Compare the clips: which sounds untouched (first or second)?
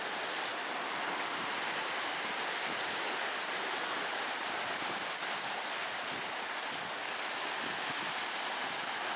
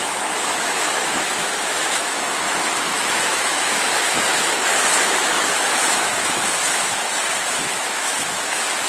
first